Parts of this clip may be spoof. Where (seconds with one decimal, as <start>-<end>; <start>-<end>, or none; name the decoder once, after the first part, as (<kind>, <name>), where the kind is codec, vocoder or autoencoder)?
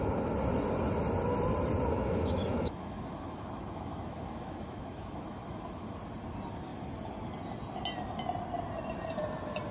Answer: 1.9-6.0 (autoencoder, DAC-VAE)